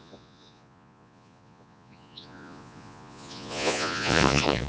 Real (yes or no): no